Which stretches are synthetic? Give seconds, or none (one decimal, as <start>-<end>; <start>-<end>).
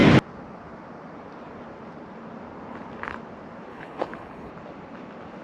3.7-4.5